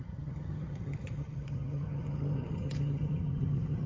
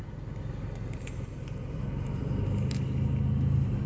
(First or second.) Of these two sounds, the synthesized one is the first